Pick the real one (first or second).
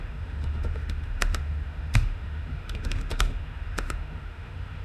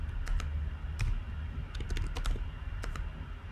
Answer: second